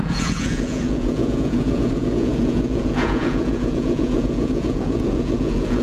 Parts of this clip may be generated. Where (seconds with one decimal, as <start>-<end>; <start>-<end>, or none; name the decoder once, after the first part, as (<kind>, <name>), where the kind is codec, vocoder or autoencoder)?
0.0-5.8 (vocoder, Vocos)